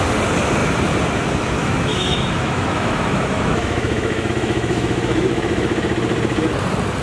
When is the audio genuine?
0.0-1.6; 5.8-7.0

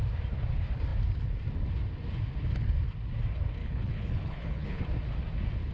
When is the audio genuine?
0.0-3.6; 4.8-5.7

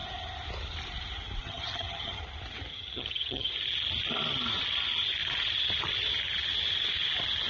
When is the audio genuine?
0.0-1.4; 2.2-2.7; 3.5-7.5

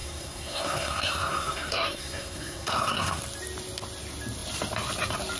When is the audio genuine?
3.2-5.4

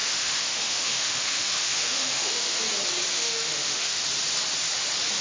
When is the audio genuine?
2.6-3.1; 4.0-5.2

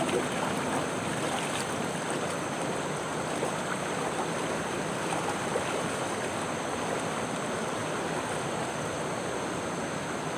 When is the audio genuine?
0.0-10.4

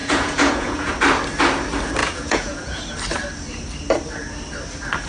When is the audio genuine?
0.9-2.0; 2.8-5.1

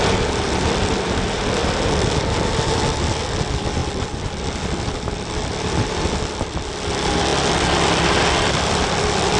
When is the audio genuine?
7.3-8.0